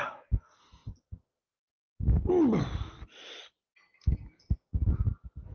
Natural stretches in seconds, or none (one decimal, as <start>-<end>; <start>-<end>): 0.0-5.5